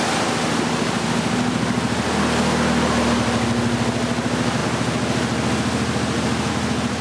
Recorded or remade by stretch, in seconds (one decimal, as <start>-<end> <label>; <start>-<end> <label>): 0.0-7.0 recorded